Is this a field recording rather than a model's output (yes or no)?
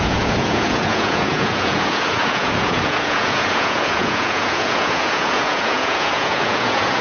no